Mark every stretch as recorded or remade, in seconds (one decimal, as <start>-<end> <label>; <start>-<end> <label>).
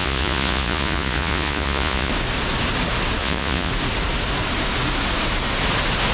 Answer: 0.0-2.1 remade; 2.1-3.2 recorded; 3.2-3.7 remade; 3.7-6.1 recorded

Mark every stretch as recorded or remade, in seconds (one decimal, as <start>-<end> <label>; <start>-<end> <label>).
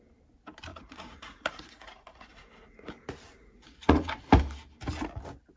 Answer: 0.0-0.7 recorded; 0.7-2.9 remade; 2.9-3.4 recorded; 3.4-4.1 remade; 4.1-5.6 recorded